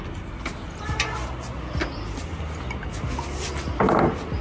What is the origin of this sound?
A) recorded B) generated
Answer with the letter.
A